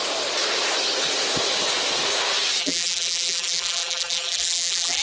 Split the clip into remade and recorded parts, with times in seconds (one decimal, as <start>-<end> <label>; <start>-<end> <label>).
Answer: 0.0-2.6 recorded; 2.6-5.0 remade